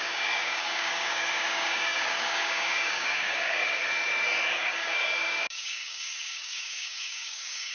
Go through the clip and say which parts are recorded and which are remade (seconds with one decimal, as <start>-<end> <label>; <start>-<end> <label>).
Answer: 0.0-3.8 remade; 3.8-4.5 recorded; 4.5-7.7 remade